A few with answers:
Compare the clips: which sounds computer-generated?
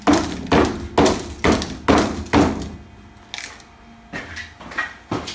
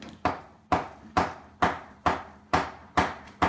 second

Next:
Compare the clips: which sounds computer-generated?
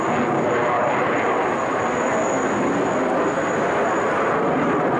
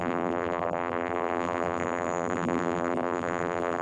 second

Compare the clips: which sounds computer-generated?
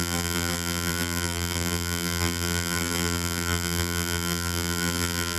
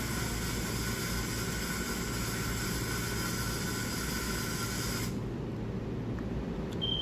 first